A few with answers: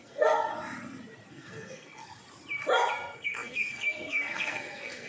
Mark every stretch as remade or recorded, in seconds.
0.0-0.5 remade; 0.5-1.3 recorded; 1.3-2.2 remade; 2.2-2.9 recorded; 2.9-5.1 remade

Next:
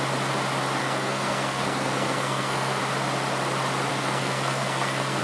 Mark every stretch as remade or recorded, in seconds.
0.0-0.8 recorded; 0.8-2.8 remade; 2.8-3.9 recorded; 3.9-5.2 remade